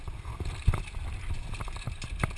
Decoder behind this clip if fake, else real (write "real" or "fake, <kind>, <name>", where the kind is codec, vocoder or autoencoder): real